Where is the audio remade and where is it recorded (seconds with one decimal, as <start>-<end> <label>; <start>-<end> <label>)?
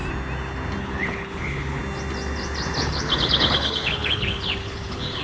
0.0-0.8 recorded; 0.8-1.8 remade; 1.8-2.8 recorded; 2.8-5.2 remade